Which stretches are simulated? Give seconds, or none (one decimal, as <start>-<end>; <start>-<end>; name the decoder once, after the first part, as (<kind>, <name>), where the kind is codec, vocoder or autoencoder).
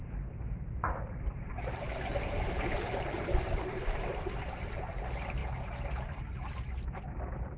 0.0-4.6 (vocoder, BigVGAN v2)